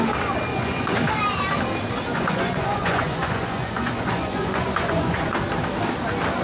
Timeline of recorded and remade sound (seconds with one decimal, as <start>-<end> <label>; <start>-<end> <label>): 0.0-0.5 recorded; 0.5-1.0 remade; 1.0-2.1 recorded; 2.1-5.3 remade; 5.3-6.4 recorded